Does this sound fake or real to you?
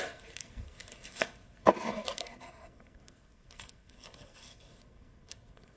fake